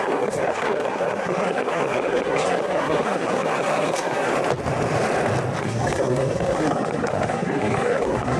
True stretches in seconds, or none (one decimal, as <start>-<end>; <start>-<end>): 4.3-5.6